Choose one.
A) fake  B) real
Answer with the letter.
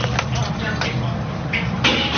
B